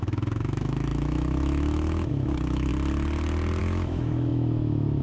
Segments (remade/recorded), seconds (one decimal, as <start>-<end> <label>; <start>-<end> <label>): 0.0-2.7 remade; 2.7-3.6 recorded; 3.6-5.0 remade